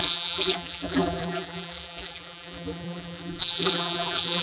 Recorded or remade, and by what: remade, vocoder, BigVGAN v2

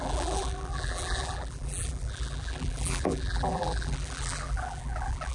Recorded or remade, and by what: remade, vocoder, BigVGAN v2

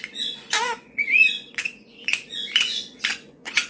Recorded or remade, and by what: remade, vocoder, Vocos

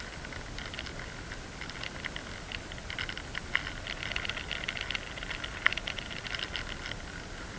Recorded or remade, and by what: recorded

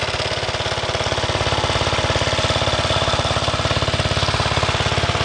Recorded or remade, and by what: recorded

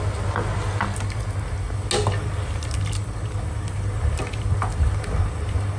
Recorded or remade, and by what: recorded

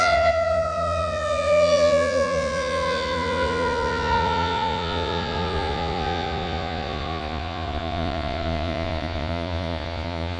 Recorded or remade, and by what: remade, vocoder, Vocos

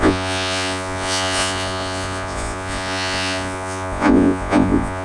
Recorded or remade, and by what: remade, vocoder, Vocos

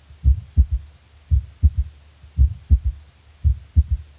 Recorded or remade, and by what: recorded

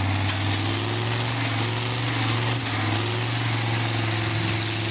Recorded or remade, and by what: recorded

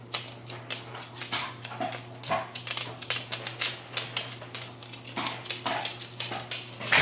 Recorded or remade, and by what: recorded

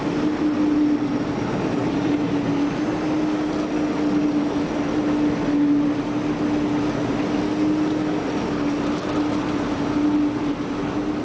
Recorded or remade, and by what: recorded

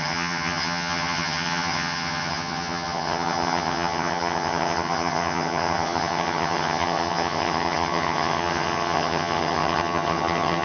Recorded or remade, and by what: remade, vocoder, HiFi-GAN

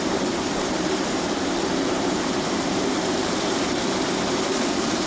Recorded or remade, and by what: remade, vocoder, BigVGAN v2